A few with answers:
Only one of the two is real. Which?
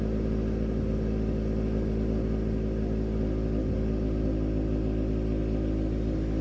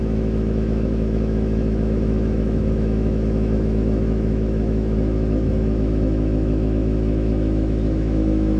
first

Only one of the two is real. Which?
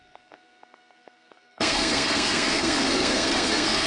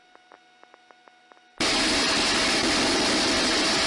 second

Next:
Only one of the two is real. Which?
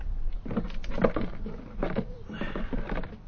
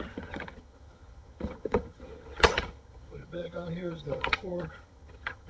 first